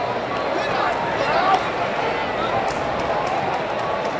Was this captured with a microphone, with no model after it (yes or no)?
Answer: yes